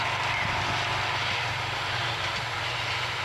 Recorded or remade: recorded